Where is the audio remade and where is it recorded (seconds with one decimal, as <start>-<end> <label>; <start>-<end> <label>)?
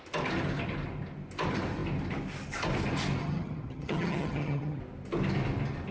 0.0-3.2 recorded; 3.2-4.8 remade; 4.8-5.9 recorded